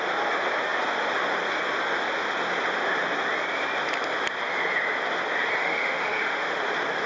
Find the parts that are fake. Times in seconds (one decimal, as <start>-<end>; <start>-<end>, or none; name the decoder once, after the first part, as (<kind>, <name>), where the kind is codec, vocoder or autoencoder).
5.6-6.6 (autoencoder, DAC-VAE)